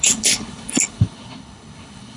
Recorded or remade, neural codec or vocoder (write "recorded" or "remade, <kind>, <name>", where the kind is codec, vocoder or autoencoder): remade, codec, HILCodec